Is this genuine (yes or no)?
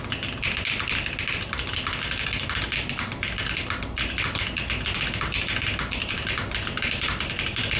yes